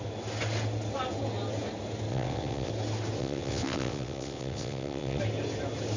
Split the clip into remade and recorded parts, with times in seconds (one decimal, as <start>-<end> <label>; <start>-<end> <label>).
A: 0.0-2.1 recorded; 2.1-2.7 remade; 2.7-3.2 recorded; 3.2-5.2 remade; 5.2-6.0 recorded